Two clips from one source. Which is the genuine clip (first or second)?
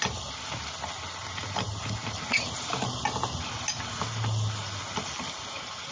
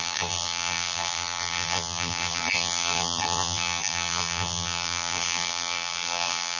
first